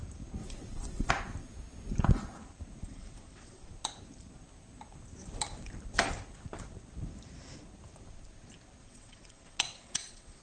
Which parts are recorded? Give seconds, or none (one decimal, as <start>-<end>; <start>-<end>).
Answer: 0.0-0.4; 1.1-2.8; 3.7-8.8